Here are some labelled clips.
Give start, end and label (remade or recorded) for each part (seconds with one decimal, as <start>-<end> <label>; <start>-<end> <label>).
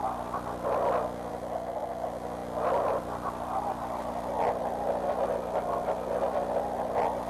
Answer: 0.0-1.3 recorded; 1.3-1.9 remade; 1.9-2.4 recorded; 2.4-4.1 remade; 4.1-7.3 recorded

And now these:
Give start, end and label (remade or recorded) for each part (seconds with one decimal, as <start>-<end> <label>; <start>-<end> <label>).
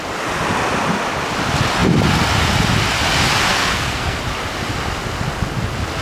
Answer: 0.0-3.5 recorded; 3.5-4.2 remade; 4.2-6.0 recorded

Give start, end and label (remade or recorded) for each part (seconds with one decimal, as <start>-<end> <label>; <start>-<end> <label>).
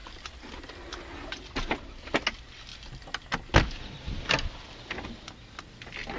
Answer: 0.0-6.2 recorded